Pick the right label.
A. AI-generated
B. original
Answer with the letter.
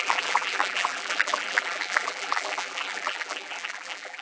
A